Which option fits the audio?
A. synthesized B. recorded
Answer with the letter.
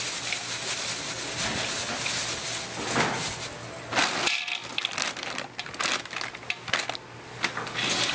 B